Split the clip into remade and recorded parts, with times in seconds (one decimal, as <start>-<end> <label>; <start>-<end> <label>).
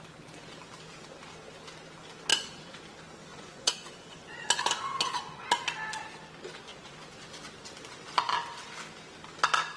0.0-2.3 recorded; 2.3-2.8 remade; 2.8-3.3 recorded; 3.3-5.5 remade; 5.5-6.7 recorded; 6.7-7.3 remade; 7.3-9.8 recorded